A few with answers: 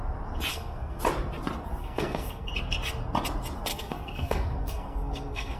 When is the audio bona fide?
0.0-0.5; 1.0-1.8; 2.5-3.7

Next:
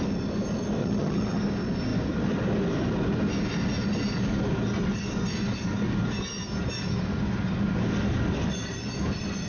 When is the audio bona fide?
0.0-0.8; 1.4-9.5

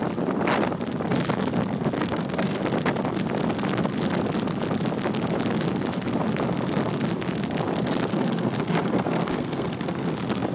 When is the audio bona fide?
0.0-2.0; 2.6-8.1; 10.1-10.5

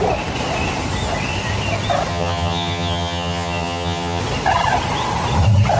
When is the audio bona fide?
0.0-2.1; 4.2-5.8

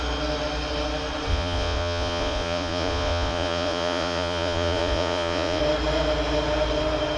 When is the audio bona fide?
0.0-1.3; 5.6-7.2

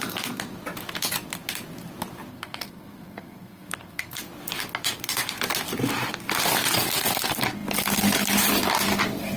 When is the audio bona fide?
0.0-2.3; 4.2-9.4

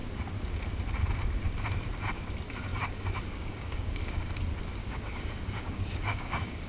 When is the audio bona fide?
0.0-2.7; 4.3-4.8